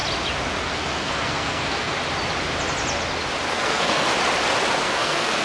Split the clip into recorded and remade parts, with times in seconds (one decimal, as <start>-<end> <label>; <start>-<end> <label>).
0.0-0.6 recorded; 0.6-1.9 remade; 1.9-3.5 recorded; 3.5-4.1 remade; 4.1-4.8 recorded; 4.8-5.4 remade